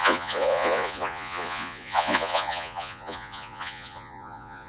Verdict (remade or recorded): remade